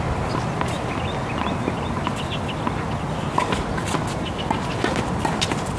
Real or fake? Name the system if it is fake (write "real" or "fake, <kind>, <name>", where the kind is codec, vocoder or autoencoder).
real